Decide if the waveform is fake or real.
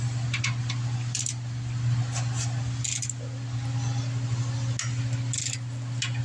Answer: real